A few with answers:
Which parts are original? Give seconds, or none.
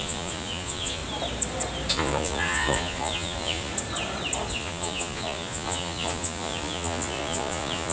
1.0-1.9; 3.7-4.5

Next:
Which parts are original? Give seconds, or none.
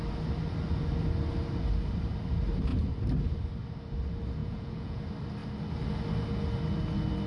0.0-4.4; 5.0-7.3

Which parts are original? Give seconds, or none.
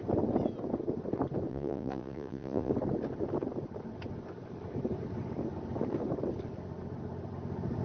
0.0-1.5; 2.7-7.8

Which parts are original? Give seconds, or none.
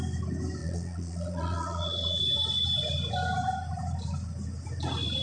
0.0-0.6; 2.2-5.2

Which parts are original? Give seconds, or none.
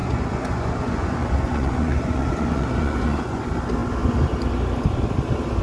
3.4-5.6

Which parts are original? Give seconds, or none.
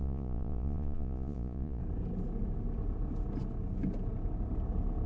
1.8-5.1